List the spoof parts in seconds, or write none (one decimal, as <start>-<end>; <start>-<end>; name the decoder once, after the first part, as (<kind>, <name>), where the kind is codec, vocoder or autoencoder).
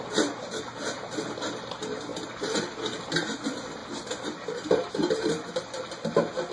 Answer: none